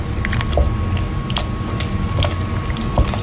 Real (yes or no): yes